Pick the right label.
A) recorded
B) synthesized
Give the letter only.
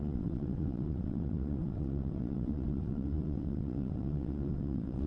B